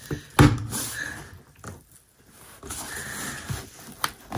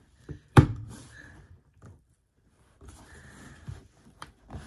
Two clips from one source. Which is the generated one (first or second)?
second